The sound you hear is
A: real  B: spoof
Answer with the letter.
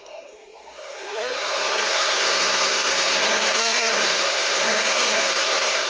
B